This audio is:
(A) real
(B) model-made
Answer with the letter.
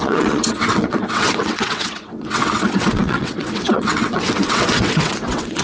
B